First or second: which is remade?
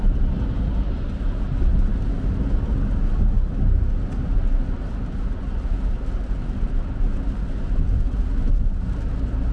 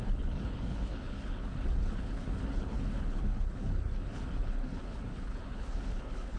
second